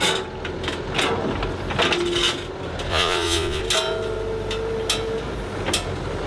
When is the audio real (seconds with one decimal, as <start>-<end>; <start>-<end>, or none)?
0.0-2.9; 3.6-6.3